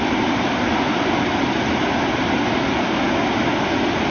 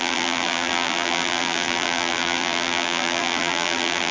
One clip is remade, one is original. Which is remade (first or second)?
second